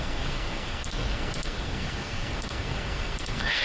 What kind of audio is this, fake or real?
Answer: fake